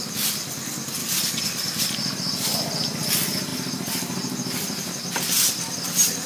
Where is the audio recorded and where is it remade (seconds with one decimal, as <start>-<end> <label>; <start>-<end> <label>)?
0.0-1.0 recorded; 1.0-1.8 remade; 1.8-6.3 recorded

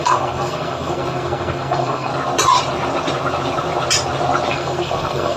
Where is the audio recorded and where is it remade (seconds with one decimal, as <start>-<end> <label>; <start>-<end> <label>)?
0.0-2.1 remade; 2.1-4.5 recorded; 4.5-5.4 remade

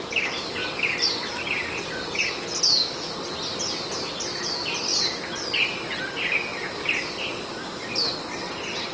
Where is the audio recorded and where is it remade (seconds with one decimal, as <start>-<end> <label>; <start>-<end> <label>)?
0.0-4.9 recorded; 4.9-6.0 remade; 6.0-6.5 recorded; 6.5-7.1 remade; 7.1-8.9 recorded

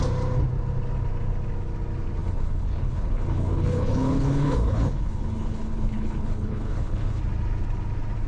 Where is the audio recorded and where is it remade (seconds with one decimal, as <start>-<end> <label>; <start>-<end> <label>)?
0.0-2.2 recorded; 2.2-7.2 remade; 7.2-8.3 recorded

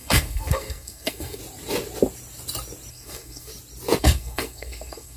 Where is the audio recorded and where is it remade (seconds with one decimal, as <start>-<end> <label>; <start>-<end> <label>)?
0.0-1.4 remade; 1.4-2.9 recorded; 2.9-3.5 remade; 3.5-4.0 recorded; 4.0-5.2 remade